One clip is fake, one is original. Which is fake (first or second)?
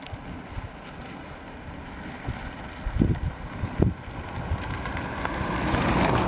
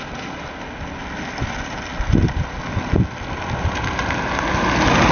first